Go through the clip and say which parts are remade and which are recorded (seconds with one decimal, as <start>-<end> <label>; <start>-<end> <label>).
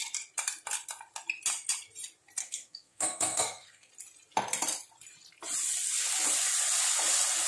0.0-2.4 recorded; 2.4-3.9 remade; 3.9-7.5 recorded